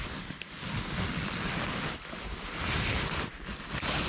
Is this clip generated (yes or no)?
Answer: no